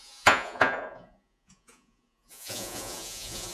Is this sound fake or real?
fake